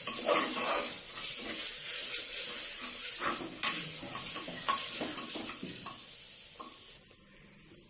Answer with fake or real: real